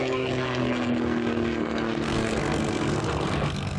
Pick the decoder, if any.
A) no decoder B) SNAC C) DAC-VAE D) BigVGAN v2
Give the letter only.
B